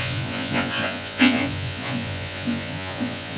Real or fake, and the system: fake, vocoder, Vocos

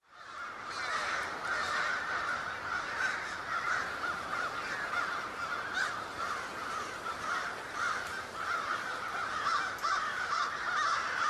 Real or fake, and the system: real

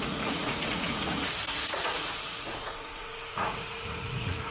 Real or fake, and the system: fake, vocoder, Vocos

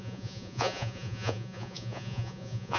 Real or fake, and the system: fake, vocoder, Vocos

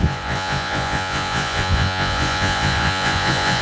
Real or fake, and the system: fake, vocoder, Vocos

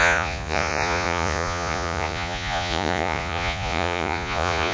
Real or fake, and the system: fake, vocoder, Vocos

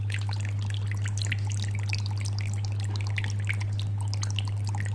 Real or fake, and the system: real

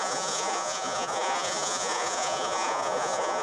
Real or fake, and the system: fake, vocoder, Vocos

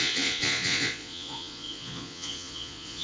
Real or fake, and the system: fake, vocoder, Vocos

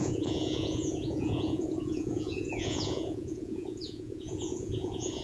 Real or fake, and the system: fake, vocoder, Vocos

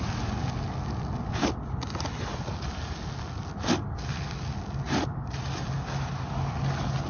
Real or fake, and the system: real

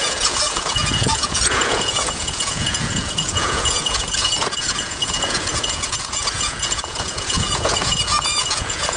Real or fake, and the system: fake, vocoder, Vocos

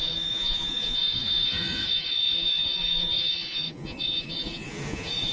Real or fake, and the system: fake, vocoder, Vocos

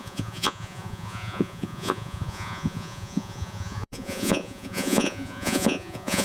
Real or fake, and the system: fake, vocoder, Vocos